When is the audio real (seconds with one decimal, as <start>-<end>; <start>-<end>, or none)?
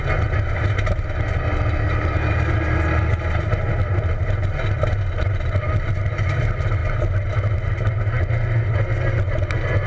0.0-9.9